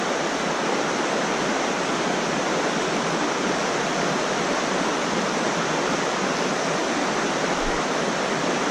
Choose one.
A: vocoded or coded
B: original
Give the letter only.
B